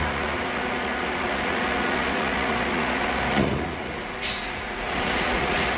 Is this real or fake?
fake